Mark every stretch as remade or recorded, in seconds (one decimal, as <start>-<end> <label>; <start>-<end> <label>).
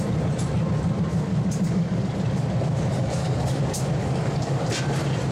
0.0-1.3 recorded; 1.3-2.0 remade; 2.0-2.9 recorded; 2.9-3.6 remade; 3.6-4.0 recorded; 4.0-4.6 remade; 4.6-5.3 recorded